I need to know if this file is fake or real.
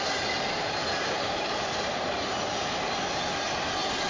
fake